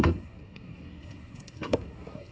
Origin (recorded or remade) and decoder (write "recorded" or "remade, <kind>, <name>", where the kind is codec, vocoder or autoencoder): remade, codec, SNAC